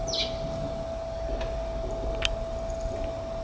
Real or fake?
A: real